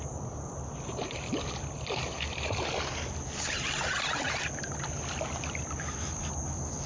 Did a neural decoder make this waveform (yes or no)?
no